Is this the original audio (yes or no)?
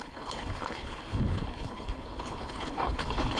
no